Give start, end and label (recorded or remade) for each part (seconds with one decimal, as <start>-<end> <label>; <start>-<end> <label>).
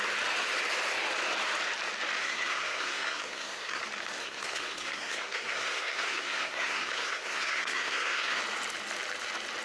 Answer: 0.0-2.2 recorded; 2.2-3.8 remade; 3.8-4.2 recorded; 4.2-8.4 remade; 8.4-9.6 recorded